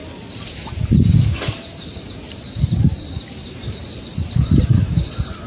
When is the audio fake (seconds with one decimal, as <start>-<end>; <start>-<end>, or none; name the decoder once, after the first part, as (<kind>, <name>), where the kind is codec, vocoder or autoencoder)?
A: 3.3-5.5 (vocoder, BigVGAN v2)